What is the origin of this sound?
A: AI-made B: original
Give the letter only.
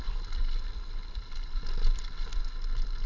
B